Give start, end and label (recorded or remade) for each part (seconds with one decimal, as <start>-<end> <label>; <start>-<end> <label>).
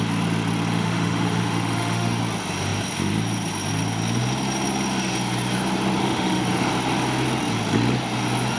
0.0-0.7 recorded; 0.7-2.2 remade; 2.2-6.0 recorded; 6.0-6.7 remade; 6.7-8.6 recorded